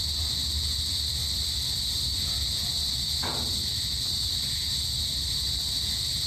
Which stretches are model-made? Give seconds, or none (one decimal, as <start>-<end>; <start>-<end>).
none